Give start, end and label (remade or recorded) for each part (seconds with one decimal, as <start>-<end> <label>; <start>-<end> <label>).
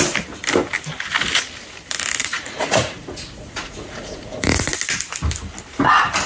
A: 0.0-2.2 recorded; 2.2-4.7 remade; 4.7-6.3 recorded